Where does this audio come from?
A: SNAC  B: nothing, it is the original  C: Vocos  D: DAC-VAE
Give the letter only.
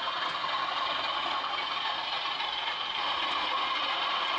C